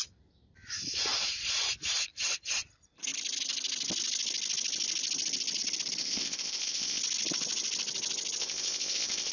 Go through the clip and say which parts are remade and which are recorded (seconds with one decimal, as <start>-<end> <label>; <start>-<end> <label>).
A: 0.0-6.0 recorded; 6.0-7.0 remade; 7.0-8.4 recorded; 8.4-9.3 remade